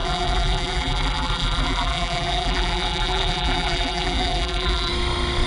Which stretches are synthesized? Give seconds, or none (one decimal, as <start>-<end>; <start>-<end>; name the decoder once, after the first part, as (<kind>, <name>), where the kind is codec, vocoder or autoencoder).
0.0-4.9 (vocoder, BigVGAN v2)